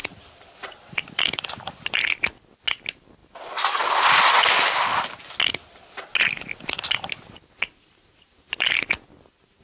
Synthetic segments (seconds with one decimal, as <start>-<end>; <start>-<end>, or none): 0.0-1.5; 3.2-4.2